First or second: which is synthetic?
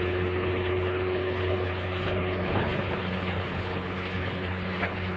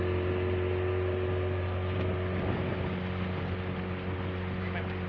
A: first